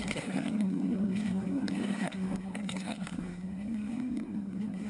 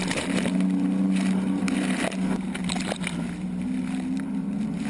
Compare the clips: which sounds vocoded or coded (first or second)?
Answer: first